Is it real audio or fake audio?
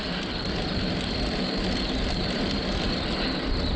fake